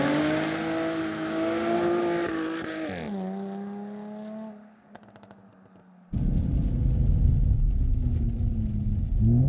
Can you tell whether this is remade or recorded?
recorded